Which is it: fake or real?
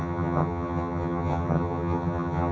fake